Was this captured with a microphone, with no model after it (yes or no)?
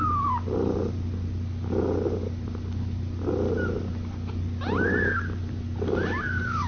yes